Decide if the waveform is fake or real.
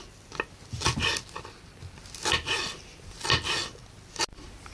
real